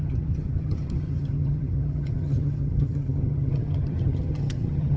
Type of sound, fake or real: fake